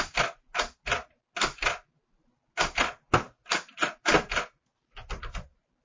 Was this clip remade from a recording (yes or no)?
no